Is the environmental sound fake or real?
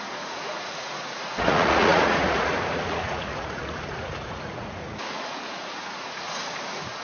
fake